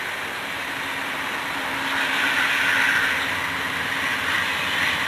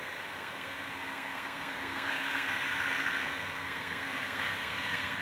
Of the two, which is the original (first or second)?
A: first